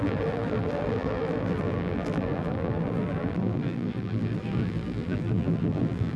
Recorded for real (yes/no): no